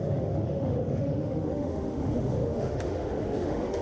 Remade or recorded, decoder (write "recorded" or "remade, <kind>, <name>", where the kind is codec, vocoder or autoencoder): remade, autoencoder, DAC-VAE